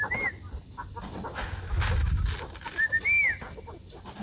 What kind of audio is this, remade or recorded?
recorded